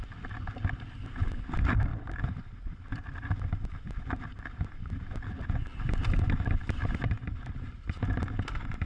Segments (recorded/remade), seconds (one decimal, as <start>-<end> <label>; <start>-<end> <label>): 0.0-1.9 recorded; 1.9-4.2 remade; 4.2-8.9 recorded